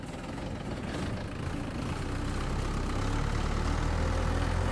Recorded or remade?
recorded